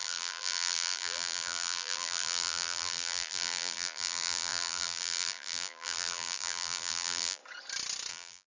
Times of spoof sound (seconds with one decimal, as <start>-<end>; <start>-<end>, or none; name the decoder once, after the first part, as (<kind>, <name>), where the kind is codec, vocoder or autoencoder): 0.0-7.4 (vocoder, BigVGAN v2); 8.1-8.5